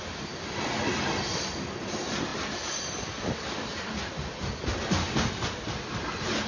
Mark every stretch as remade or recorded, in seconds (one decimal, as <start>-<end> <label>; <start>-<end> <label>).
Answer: 0.0-6.5 recorded